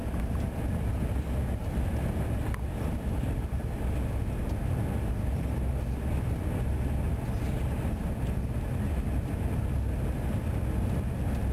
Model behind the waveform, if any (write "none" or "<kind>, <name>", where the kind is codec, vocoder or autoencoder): none